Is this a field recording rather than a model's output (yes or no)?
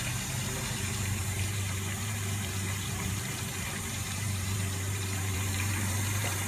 no